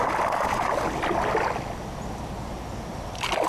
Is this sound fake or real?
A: real